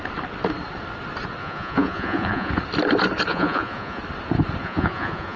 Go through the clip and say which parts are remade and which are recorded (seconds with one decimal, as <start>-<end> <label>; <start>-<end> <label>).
0.0-1.4 recorded; 1.4-2.5 remade; 2.5-3.3 recorded; 3.3-4.0 remade; 4.0-4.6 recorded; 4.6-5.4 remade